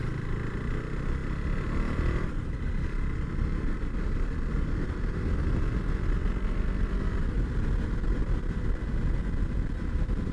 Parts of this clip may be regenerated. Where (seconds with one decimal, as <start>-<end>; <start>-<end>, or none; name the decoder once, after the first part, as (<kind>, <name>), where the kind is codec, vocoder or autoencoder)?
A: none